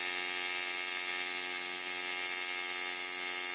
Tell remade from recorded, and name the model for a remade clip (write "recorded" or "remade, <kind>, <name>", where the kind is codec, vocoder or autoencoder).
recorded